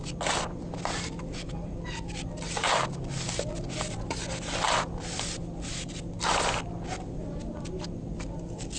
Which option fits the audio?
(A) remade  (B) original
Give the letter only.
B